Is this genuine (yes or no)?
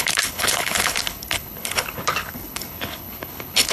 no